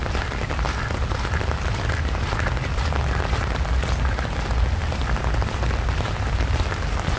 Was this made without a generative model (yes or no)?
yes